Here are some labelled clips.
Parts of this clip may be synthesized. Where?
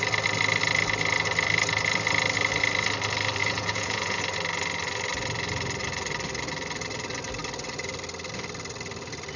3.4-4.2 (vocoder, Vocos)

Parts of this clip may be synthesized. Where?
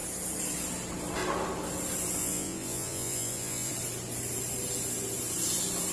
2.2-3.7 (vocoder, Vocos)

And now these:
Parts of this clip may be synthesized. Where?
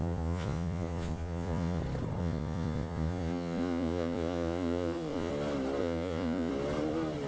0.0-1.8 (vocoder, Vocos); 2.2-5.3; 5.8-6.5